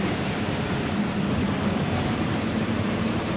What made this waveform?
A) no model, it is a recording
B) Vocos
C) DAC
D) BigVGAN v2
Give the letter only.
D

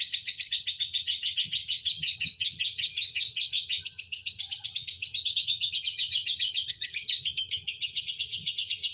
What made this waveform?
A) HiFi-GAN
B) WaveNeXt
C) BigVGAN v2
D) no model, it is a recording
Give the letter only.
A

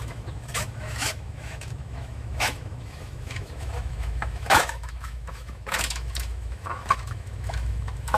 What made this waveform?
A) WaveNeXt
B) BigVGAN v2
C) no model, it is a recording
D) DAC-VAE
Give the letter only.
D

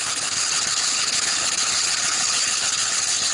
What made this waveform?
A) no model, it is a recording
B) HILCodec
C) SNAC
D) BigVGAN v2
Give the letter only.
B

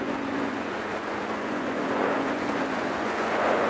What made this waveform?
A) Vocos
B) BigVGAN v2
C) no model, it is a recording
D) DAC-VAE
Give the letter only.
A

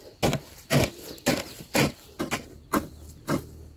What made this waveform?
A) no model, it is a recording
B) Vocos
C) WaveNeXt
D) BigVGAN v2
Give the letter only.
A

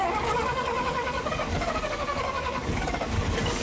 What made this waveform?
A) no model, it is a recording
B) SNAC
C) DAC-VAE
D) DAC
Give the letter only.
D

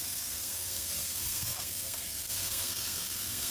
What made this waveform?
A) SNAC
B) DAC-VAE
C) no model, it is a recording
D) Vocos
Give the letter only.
A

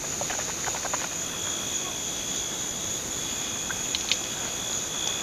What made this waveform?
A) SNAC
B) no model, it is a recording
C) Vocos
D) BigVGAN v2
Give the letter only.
B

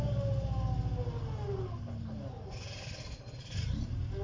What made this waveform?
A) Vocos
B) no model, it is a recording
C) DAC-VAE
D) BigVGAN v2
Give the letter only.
B